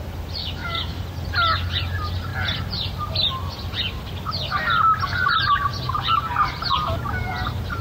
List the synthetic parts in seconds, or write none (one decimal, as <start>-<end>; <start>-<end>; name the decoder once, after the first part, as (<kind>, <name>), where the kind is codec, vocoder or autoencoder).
0.4-1.0 (autoencoder, DAC-VAE)